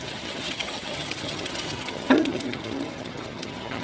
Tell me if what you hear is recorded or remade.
remade